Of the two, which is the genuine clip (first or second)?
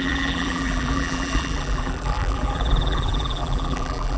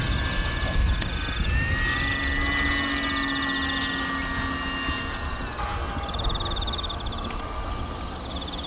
second